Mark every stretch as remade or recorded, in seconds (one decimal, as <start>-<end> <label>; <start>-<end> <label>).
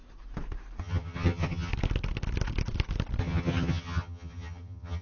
0.0-0.8 recorded; 0.8-1.7 remade; 1.7-3.2 recorded; 3.2-5.0 remade